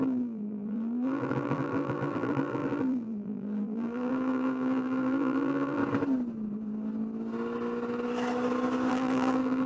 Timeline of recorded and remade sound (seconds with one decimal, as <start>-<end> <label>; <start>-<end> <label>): 0.0-5.8 remade; 5.8-8.9 recorded; 8.9-9.7 remade